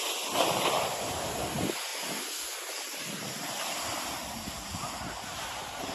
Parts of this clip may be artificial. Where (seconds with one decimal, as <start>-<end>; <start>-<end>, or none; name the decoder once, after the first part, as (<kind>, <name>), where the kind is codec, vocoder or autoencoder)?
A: none